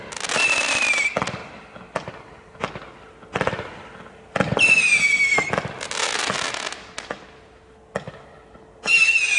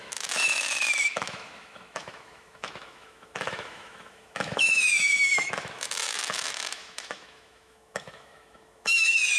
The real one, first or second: first